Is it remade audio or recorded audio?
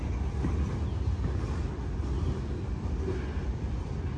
recorded